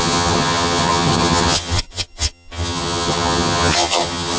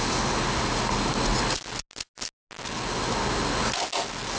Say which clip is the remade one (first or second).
first